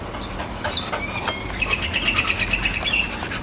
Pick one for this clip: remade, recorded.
recorded